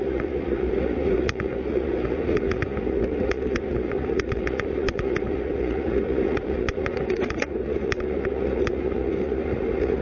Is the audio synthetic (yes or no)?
yes